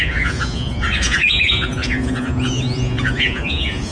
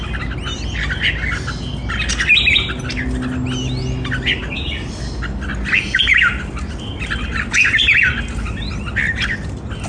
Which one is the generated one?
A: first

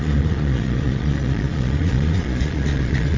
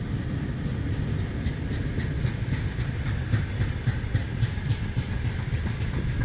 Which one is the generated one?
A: first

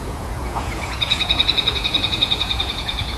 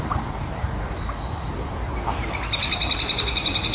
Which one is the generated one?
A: first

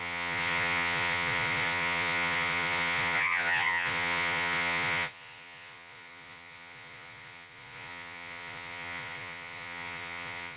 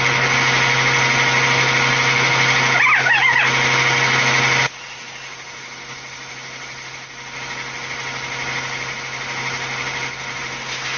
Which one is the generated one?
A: first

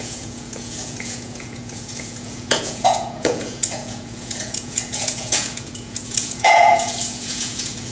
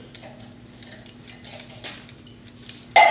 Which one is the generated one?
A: first